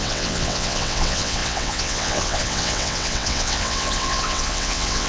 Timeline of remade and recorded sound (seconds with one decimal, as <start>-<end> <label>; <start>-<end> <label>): 0.0-5.1 remade